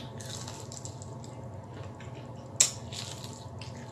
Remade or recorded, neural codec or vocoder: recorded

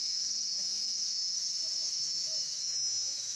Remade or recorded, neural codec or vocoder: remade, autoencoder, DAC-VAE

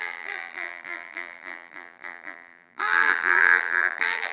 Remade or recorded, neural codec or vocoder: remade, vocoder, BigVGAN v2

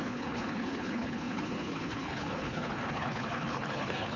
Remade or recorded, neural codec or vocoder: remade, codec, HILCodec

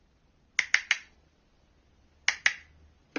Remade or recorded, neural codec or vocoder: recorded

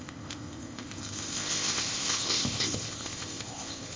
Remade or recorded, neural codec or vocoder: remade, codec, ZipCodec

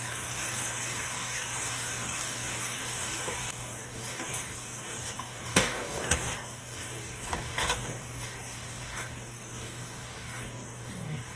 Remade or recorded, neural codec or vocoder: remade, codec, DAC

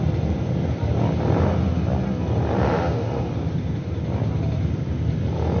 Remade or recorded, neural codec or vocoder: recorded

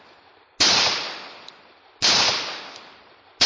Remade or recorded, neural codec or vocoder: recorded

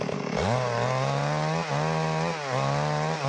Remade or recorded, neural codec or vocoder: recorded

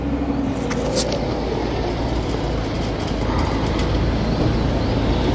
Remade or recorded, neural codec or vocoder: recorded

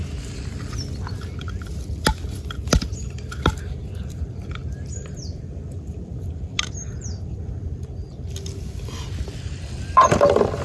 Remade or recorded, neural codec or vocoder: recorded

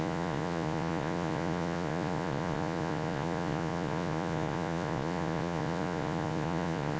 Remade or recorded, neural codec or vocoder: remade, vocoder, Vocos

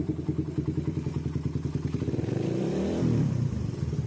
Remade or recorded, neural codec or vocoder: remade, vocoder, BigVGAN v2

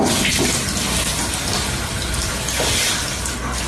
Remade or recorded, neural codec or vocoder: recorded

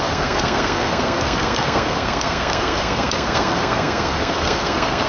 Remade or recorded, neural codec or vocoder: remade, codec, SNAC